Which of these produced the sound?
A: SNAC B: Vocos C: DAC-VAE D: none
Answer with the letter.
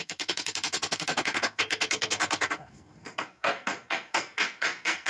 A